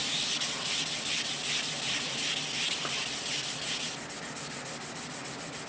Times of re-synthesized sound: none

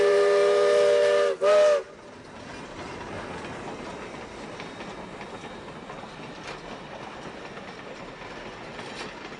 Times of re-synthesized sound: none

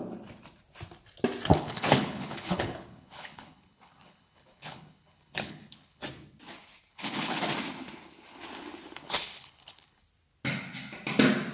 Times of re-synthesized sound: 1.5-6.0; 6.9-7.4; 9.0-10.0

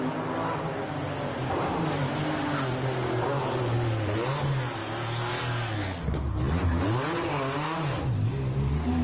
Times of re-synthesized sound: none